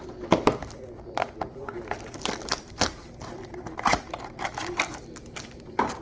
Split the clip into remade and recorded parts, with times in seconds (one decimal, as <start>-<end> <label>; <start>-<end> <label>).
0.0-6.0 remade